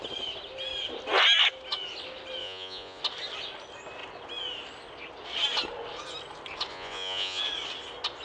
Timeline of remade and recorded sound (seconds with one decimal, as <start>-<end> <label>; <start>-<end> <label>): 0.0-2.4 recorded; 2.4-3.0 remade; 3.0-6.7 recorded; 6.7-7.4 remade; 7.4-8.2 recorded